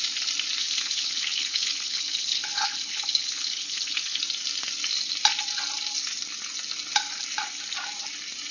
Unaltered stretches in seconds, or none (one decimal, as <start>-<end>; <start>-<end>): 0.0-0.6; 4.2-8.5